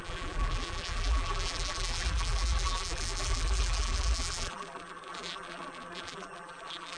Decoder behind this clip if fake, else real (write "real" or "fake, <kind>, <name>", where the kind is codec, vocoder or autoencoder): fake, vocoder, BigVGAN v2